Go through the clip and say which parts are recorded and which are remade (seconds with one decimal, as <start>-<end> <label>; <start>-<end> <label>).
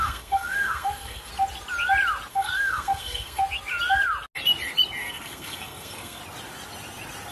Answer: 0.0-1.3 remade; 1.3-2.3 recorded; 2.3-3.4 remade; 3.4-5.0 recorded; 5.0-6.2 remade; 6.2-7.3 recorded